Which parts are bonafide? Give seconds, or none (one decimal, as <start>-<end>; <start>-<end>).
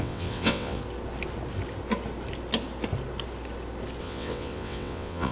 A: 0.8-4.0